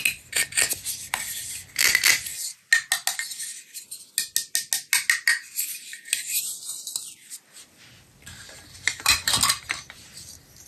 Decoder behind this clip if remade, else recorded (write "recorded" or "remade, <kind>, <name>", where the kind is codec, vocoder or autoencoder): recorded